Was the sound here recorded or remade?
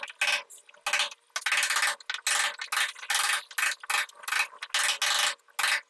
recorded